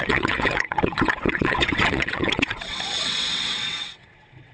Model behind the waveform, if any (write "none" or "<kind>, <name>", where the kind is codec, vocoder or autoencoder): vocoder, WaveNeXt